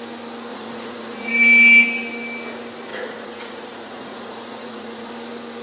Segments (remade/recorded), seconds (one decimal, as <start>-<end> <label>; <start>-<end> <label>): 0.0-0.5 recorded; 0.5-1.3 remade; 1.3-2.9 recorded; 2.9-5.1 remade; 5.1-5.6 recorded